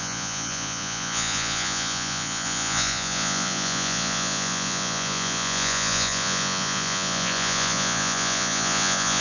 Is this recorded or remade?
remade